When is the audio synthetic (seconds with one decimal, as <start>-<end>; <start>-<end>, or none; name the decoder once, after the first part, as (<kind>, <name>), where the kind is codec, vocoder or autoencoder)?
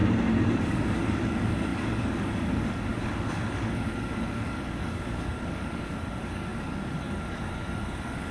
0.5-8.3 (codec, DAC)